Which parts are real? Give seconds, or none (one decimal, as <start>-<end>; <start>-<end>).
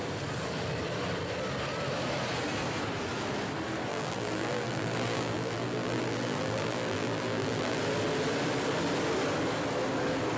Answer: 0.0-3.9; 7.8-10.4